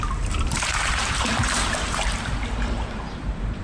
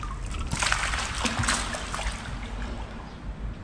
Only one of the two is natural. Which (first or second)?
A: second